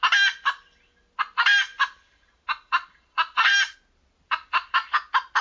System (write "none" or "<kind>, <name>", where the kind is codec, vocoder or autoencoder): none